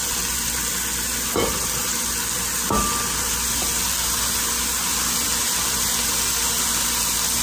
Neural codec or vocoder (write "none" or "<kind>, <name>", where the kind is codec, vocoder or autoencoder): none